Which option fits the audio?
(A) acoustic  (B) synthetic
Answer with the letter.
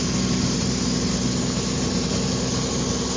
A